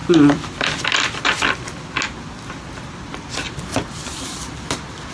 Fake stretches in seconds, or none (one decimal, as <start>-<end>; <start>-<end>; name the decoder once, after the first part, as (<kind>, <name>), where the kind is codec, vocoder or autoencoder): 3.7-4.2 (vocoder, BigVGAN v2)

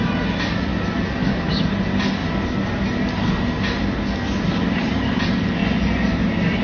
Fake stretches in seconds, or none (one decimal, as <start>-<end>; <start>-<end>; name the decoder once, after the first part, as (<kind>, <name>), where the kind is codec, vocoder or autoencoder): 0.0-0.7 (vocoder, BigVGAN v2); 1.3-2.2; 4.7-5.6

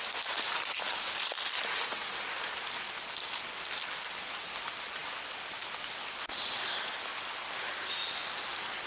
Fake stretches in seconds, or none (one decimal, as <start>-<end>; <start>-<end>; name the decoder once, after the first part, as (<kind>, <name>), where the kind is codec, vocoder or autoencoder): none

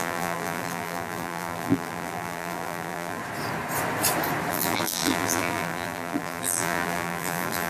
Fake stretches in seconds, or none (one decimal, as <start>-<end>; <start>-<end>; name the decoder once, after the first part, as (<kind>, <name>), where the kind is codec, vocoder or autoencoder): 0.0-3.2 (vocoder, BigVGAN v2); 4.5-7.7

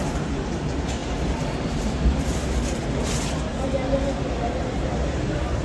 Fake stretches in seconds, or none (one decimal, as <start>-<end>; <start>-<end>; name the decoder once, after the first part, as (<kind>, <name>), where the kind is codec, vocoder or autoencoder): 0.0-2.8 (vocoder, BigVGAN v2); 4.6-5.6

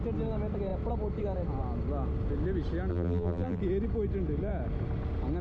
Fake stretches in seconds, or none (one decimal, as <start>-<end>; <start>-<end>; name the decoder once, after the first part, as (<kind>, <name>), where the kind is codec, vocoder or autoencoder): 2.9-3.6 (vocoder, BigVGAN v2)

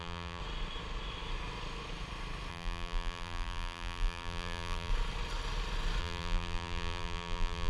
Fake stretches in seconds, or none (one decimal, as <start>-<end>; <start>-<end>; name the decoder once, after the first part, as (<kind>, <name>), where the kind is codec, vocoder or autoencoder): 0.0-0.4 (vocoder, BigVGAN v2); 2.5-4.9; 6.0-7.7